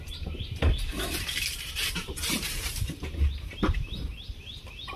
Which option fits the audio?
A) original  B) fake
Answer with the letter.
B